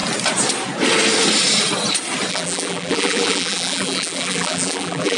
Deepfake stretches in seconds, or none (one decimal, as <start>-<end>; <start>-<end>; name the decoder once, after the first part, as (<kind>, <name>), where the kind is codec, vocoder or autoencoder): 2.3-5.2 (vocoder, BigVGAN v2)